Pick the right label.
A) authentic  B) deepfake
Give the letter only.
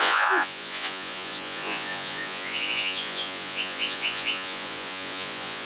B